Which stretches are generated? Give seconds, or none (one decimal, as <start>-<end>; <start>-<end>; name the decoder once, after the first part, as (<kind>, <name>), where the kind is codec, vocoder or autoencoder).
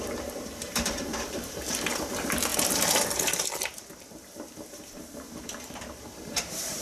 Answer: 0.0-6.8 (vocoder, BigVGAN v2)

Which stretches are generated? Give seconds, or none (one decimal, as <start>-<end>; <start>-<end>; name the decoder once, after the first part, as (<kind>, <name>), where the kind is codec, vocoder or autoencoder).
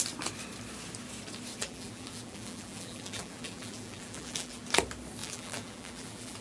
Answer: 1.6-4.6 (vocoder, BigVGAN v2); 5.2-6.4